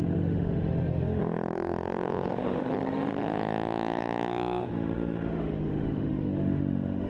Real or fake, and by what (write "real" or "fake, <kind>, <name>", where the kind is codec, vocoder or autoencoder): fake, autoencoder, DAC-VAE